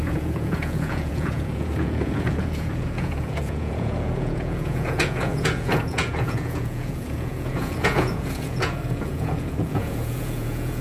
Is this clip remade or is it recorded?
remade